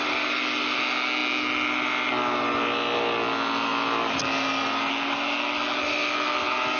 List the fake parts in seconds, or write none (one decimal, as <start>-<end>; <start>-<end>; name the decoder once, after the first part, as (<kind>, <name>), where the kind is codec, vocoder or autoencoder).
none